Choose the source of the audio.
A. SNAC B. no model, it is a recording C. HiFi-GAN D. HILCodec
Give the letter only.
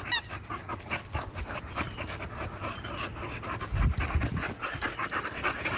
B